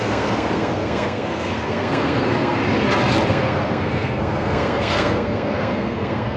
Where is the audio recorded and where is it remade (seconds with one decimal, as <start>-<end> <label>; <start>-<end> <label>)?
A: 0.0-2.6 remade; 2.6-3.3 recorded; 3.3-6.4 remade